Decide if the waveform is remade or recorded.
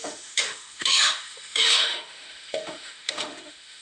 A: remade